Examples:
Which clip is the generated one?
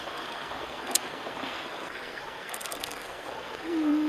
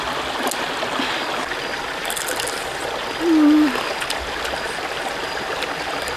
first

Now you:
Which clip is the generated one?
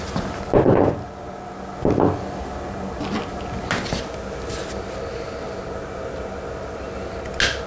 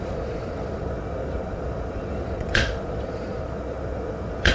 second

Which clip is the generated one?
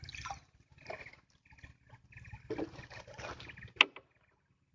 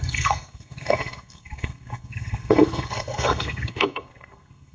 second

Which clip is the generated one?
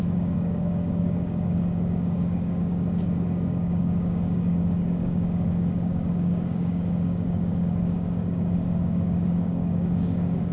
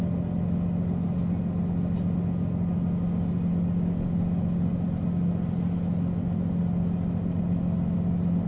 first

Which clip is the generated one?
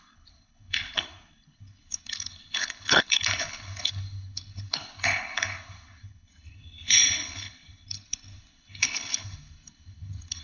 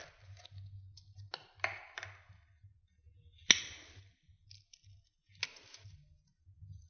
first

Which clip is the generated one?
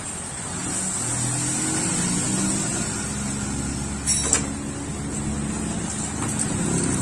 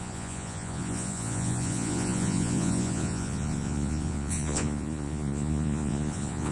second